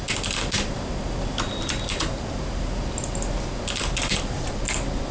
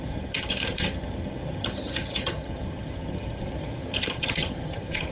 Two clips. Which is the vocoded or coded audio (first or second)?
second